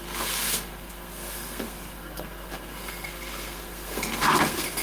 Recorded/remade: remade